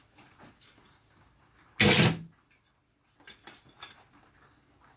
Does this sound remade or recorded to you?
recorded